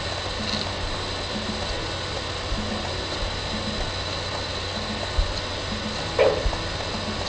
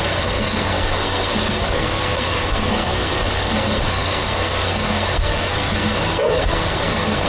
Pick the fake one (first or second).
second